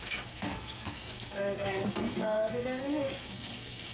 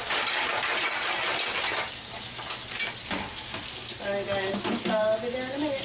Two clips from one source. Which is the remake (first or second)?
first